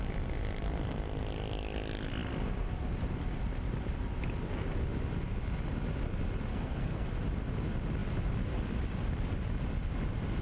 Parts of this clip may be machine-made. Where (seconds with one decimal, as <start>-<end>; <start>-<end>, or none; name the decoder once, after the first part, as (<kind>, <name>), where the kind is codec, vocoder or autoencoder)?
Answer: 6.5-7.1 (codec, SNAC)